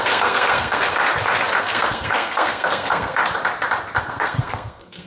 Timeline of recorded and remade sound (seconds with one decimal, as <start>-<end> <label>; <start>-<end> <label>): 0.0-1.0 remade; 1.0-1.6 recorded; 1.6-3.2 remade; 3.2-4.0 recorded; 4.0-5.1 remade